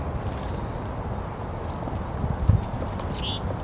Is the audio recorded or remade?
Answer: recorded